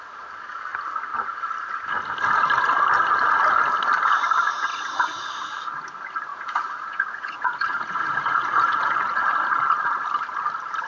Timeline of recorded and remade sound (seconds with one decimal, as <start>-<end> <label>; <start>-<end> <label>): 0.0-4.7 recorded; 4.7-5.4 remade; 5.4-6.3 recorded; 6.3-9.3 remade; 9.3-10.9 recorded